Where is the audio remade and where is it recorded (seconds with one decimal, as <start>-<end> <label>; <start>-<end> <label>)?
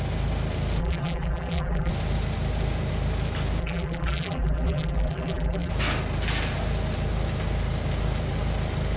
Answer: 0.0-0.8 recorded; 0.8-1.9 remade; 1.9-3.6 recorded; 3.6-5.7 remade; 5.7-9.0 recorded